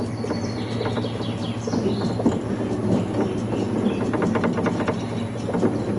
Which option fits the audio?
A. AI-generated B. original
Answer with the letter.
B